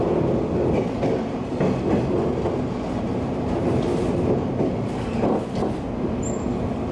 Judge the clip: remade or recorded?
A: recorded